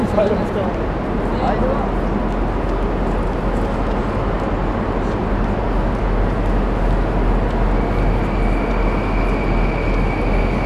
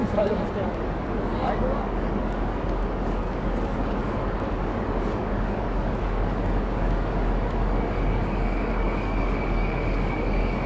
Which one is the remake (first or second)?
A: second